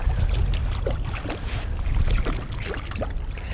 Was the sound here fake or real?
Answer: real